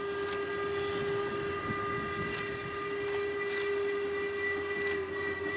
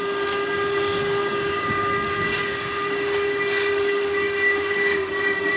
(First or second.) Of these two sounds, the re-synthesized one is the second